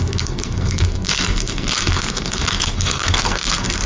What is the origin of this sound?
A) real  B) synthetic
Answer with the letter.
B